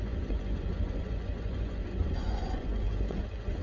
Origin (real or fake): fake